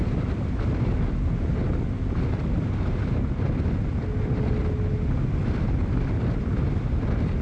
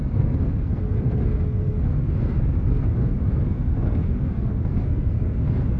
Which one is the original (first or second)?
first